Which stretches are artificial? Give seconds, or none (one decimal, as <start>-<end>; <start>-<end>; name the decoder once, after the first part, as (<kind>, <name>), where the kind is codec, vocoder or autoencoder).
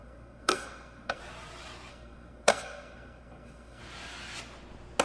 0.0-1.2 (codec, SNAC); 1.9-3.8